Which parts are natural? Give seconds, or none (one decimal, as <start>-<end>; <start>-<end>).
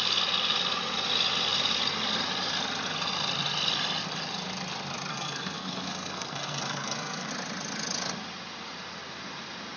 0.0-5.1; 7.3-9.8